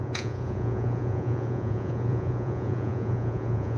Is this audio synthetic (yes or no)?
yes